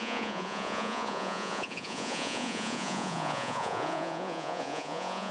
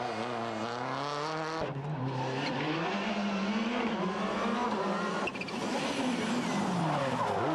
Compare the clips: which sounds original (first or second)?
second